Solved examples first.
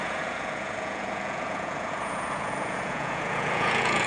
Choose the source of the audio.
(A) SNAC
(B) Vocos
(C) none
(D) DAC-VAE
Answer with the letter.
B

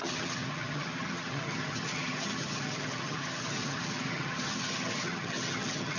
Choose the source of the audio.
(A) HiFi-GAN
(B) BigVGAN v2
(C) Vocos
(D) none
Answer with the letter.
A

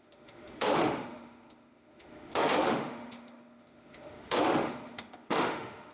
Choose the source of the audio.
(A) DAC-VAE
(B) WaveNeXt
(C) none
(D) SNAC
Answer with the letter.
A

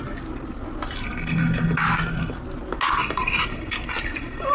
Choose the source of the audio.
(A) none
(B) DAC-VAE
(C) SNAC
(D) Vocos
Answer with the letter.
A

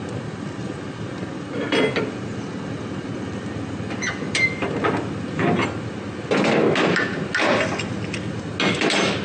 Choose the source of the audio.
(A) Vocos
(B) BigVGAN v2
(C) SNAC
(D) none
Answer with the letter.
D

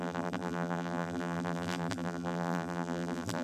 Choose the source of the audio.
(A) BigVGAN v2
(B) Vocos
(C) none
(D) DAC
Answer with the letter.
A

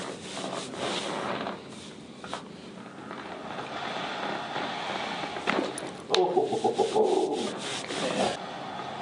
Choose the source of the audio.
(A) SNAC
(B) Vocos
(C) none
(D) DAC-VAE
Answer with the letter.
C